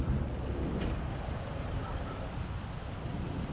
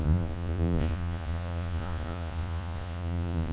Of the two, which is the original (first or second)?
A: first